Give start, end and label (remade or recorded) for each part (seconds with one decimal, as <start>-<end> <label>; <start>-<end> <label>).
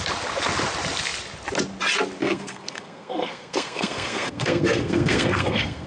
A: 0.0-2.2 recorded; 2.2-5.9 remade